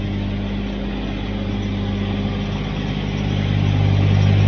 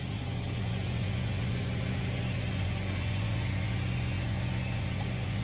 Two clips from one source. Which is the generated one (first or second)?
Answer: second